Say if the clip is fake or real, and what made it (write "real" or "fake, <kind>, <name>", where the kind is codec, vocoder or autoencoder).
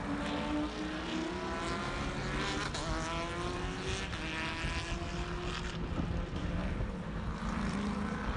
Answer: real